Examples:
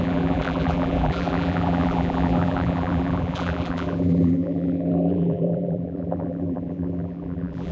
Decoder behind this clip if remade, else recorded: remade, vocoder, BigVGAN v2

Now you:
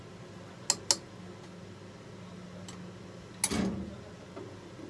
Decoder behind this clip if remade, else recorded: recorded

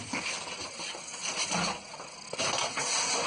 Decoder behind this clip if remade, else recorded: recorded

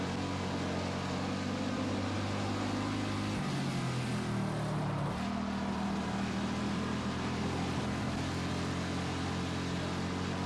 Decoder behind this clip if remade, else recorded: recorded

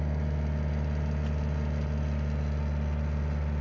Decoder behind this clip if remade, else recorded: recorded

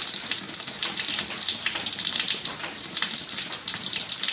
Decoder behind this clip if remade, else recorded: remade, vocoder, BigVGAN v2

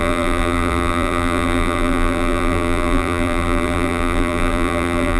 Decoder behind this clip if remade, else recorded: remade, vocoder, BigVGAN v2